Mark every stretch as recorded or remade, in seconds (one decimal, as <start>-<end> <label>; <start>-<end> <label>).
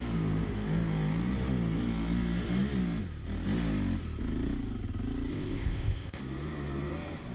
0.0-5.3 recorded; 5.3-6.2 remade; 6.2-7.3 recorded